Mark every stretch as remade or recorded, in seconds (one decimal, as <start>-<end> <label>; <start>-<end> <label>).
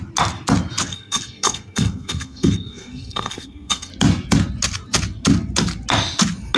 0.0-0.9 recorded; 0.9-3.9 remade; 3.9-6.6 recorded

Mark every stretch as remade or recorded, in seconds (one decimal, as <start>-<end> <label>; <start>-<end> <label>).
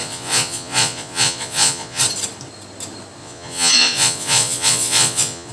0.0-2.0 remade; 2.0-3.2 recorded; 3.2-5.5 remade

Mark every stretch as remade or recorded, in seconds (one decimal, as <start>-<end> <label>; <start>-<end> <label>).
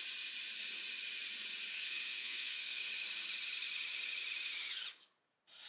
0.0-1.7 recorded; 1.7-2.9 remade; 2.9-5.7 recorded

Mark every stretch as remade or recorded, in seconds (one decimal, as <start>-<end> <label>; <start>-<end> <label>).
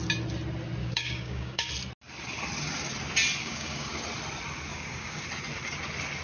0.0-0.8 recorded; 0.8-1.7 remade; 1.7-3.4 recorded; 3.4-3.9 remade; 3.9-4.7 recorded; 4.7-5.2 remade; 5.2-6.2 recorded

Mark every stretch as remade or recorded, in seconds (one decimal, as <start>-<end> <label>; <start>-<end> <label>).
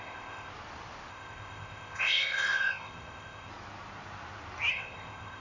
0.0-0.5 remade; 0.5-1.1 recorded; 1.1-3.5 remade; 3.5-4.7 recorded; 4.7-5.4 remade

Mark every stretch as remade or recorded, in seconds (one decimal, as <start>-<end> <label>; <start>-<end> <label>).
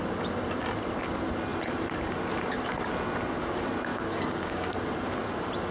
0.0-3.9 recorded; 3.9-4.7 remade; 4.7-5.7 recorded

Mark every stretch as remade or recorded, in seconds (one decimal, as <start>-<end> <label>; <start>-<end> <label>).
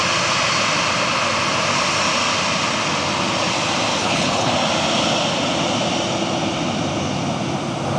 0.0-4.0 recorded; 4.0-4.5 remade; 4.5-8.0 recorded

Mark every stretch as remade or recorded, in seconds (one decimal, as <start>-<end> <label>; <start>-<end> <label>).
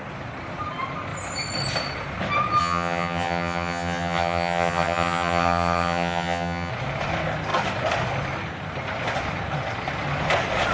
0.0-2.6 recorded; 2.6-6.7 remade; 6.7-10.7 recorded